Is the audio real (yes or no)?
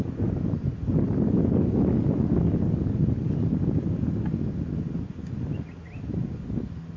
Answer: yes